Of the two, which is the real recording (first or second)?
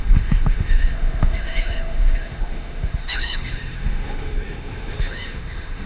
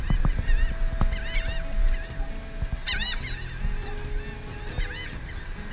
second